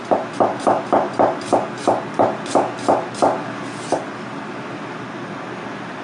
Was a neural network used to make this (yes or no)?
no